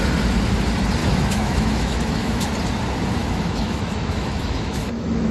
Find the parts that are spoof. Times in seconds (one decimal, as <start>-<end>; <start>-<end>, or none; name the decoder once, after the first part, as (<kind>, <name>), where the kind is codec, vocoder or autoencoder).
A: 1.0-2.4 (autoencoder, DAC-VAE); 3.2-5.3